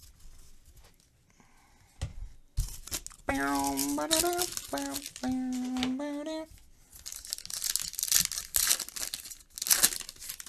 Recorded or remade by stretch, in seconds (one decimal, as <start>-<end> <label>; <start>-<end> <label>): 0.0-10.5 recorded